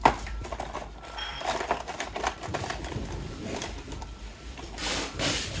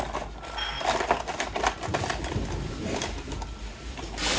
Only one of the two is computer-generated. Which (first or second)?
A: first